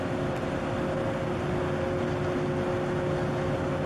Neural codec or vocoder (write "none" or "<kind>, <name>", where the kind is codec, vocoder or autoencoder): none